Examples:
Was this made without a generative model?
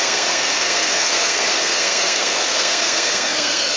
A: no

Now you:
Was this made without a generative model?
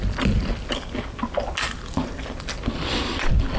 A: yes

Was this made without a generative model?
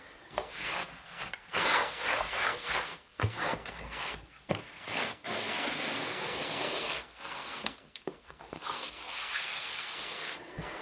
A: no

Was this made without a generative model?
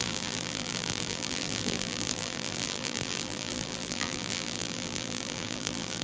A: no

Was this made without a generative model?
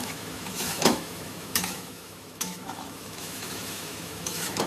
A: no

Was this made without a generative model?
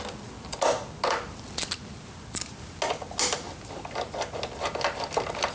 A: yes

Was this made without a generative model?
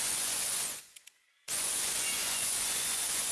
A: no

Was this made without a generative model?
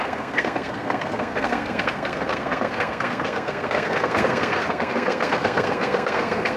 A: no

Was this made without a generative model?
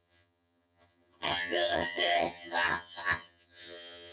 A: no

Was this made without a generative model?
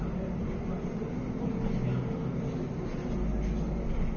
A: yes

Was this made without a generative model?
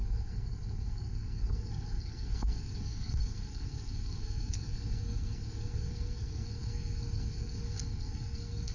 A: no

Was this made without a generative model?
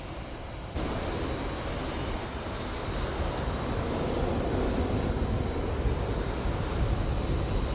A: yes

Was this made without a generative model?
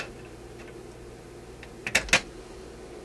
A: yes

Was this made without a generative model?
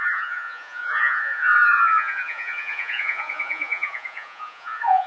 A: no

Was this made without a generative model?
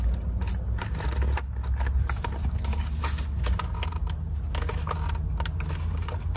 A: yes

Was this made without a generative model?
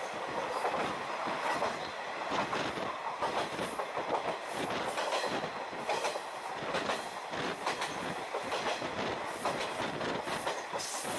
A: yes